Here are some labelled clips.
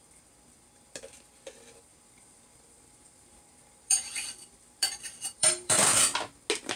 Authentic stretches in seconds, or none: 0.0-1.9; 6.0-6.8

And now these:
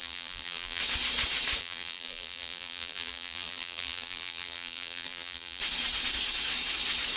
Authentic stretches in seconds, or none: 0.8-1.6; 5.6-7.2